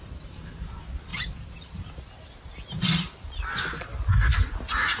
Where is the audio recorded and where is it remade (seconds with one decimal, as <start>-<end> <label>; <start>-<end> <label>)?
0.0-5.0 recorded